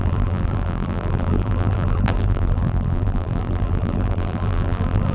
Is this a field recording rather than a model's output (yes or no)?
no